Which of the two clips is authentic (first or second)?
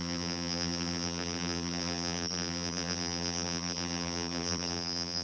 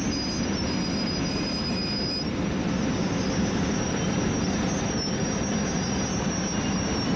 second